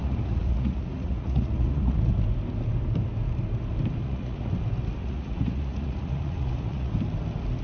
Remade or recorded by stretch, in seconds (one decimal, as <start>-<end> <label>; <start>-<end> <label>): 0.0-2.1 remade; 2.1-4.0 recorded; 4.0-4.5 remade; 4.5-5.0 recorded; 5.0-6.9 remade; 6.9-7.6 recorded